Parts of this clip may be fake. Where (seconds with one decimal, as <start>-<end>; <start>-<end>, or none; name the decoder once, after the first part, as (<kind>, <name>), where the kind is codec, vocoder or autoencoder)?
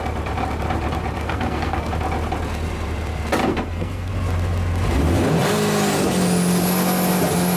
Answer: 1.2-1.9 (codec, SNAC); 3.4-4.1